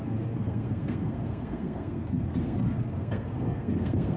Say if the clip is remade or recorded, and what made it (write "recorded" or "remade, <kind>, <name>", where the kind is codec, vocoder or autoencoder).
remade, codec, SNAC